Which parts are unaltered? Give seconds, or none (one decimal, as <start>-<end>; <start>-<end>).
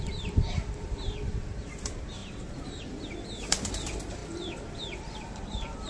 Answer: 4.2-4.7